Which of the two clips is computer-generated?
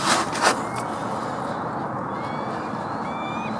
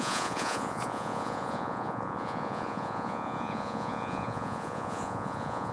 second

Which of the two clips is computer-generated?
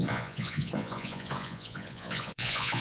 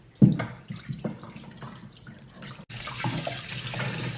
first